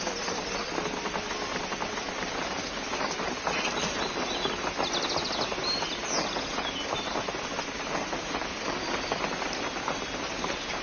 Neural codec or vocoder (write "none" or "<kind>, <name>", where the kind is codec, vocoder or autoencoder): none